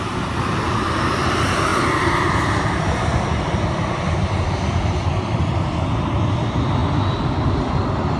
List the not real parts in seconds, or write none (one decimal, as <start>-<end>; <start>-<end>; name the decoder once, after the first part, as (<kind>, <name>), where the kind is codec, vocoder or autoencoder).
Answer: none